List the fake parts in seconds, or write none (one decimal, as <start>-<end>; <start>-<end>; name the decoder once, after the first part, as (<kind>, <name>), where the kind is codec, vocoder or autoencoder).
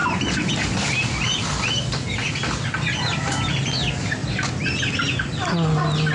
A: none